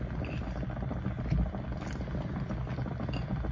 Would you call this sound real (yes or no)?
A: yes